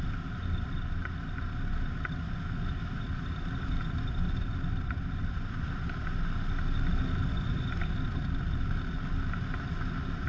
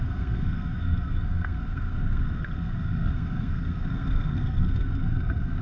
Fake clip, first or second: second